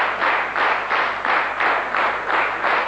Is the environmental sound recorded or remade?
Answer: recorded